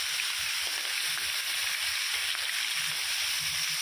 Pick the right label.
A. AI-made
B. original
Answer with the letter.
B